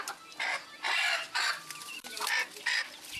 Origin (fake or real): fake